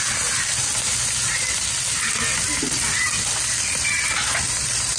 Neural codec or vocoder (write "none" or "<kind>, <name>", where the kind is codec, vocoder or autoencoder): none